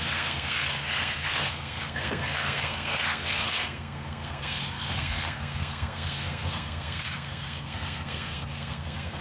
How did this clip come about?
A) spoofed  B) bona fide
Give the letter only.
A